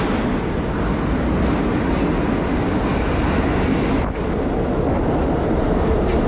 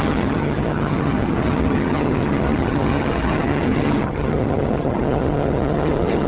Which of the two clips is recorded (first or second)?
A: first